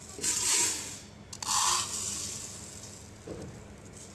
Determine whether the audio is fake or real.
real